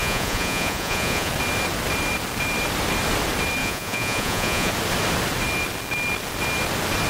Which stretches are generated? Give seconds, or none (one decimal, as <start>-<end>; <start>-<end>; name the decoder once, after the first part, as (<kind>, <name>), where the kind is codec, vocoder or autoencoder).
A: 0.0-1.3 (vocoder, Vocos); 3.6-4.7